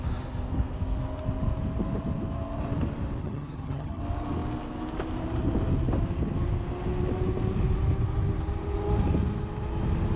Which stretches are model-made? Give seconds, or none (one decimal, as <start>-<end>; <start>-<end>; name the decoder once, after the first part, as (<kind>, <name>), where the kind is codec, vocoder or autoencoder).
3.2-4.0 (vocoder, HiFi-GAN)